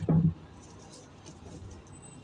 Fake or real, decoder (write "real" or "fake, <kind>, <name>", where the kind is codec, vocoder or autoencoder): real